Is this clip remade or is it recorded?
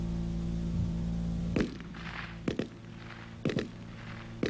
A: recorded